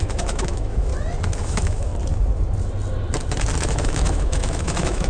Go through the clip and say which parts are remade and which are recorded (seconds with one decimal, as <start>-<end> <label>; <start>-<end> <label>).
0.0-0.9 remade; 0.9-1.4 recorded; 1.4-1.9 remade; 1.9-3.6 recorded; 3.6-5.1 remade